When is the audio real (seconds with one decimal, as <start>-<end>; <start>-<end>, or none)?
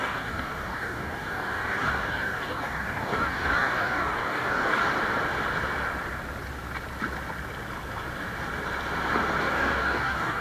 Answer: 4.8-9.4